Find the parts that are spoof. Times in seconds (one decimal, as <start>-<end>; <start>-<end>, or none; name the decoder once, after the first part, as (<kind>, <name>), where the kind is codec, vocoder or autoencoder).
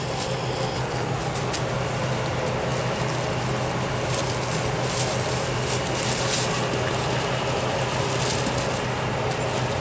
none